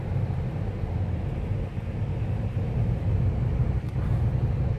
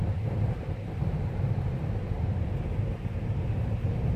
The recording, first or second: first